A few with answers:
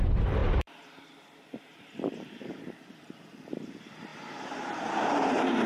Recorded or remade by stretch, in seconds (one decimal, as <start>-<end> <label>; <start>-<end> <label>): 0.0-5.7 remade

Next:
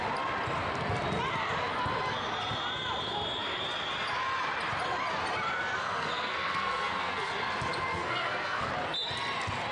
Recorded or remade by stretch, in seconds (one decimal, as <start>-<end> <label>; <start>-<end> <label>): 0.0-5.8 recorded; 5.8-7.3 remade; 7.3-7.9 recorded; 7.9-8.7 remade; 8.7-9.7 recorded

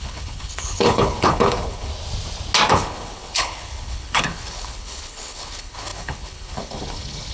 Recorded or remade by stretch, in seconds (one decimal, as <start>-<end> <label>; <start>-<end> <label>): 0.0-1.9 remade; 1.9-2.7 recorded; 2.7-7.3 remade